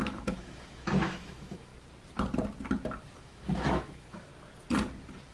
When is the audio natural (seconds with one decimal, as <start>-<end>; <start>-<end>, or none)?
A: 1.7-3.2; 4.3-5.3